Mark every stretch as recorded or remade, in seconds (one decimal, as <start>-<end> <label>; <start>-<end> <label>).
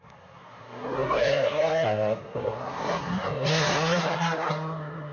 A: 0.0-5.1 remade